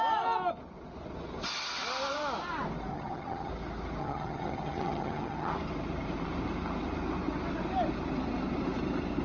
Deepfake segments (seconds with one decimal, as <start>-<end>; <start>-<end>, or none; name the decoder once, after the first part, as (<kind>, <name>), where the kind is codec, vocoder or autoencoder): 2.9-3.5 (vocoder, HiFi-GAN); 4.0-5.5